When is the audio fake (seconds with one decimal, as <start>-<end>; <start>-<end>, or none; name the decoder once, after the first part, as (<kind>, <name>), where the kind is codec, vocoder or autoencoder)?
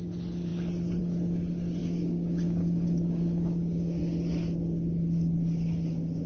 1.8-4.0 (codec, DAC)